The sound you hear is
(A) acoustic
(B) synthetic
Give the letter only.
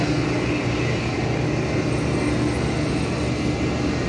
A